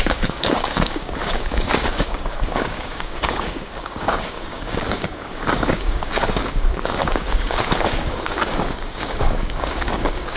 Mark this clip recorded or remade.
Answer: remade